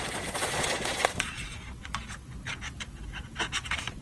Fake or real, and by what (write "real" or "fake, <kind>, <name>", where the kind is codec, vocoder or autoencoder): fake, vocoder, Vocos